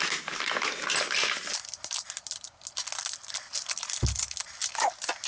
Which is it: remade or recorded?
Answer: recorded